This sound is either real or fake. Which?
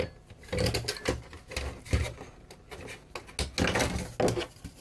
real